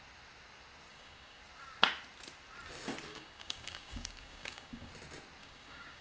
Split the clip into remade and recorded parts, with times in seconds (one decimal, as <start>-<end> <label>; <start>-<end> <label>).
0.0-0.9 recorded; 0.9-1.4 remade; 1.4-3.1 recorded; 3.1-4.9 remade; 4.9-5.4 recorded; 5.4-6.0 remade